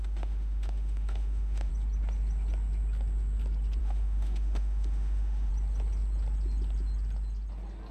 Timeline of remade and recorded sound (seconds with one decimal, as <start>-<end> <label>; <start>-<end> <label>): 0.0-1.7 remade; 1.7-3.8 recorded; 3.8-5.5 remade; 5.5-7.9 recorded

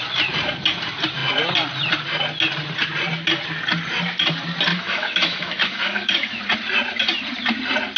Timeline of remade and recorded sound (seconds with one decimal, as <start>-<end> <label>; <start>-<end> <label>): 0.0-4.7 recorded; 4.7-6.4 remade; 6.4-8.0 recorded

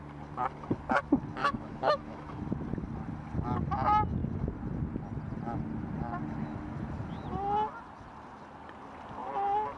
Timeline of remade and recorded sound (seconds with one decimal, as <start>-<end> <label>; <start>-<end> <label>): 0.0-1.4 recorded; 1.4-2.4 remade; 2.4-9.8 recorded

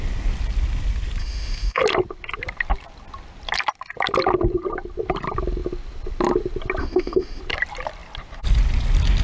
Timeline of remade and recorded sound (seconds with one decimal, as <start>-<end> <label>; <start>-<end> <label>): 0.0-1.2 recorded; 1.2-1.8 remade; 1.8-6.8 recorded; 6.8-7.4 remade; 7.4-9.2 recorded

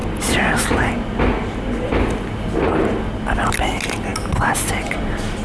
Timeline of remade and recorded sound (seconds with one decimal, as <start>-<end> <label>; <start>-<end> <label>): 0.0-5.4 recorded